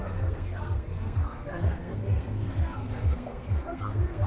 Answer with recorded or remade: remade